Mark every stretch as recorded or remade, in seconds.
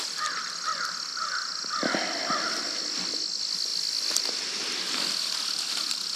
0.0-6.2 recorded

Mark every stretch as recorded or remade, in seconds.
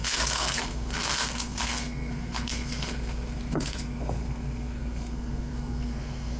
0.0-6.4 remade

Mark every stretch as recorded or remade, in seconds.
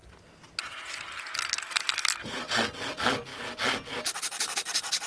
0.0-5.1 recorded